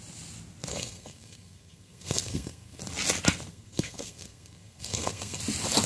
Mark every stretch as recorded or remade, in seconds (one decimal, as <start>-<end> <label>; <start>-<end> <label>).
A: 0.0-0.7 recorded; 0.7-2.8 remade; 2.8-3.5 recorded; 3.5-5.4 remade; 5.4-5.9 recorded